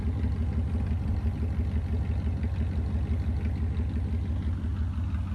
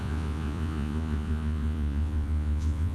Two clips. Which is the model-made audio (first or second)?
second